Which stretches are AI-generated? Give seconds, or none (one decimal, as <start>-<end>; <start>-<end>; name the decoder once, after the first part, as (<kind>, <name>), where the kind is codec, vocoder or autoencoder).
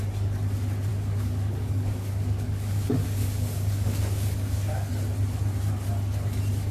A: 0.9-4.9 (codec, DAC)